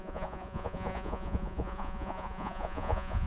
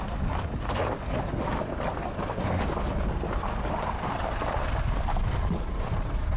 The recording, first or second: second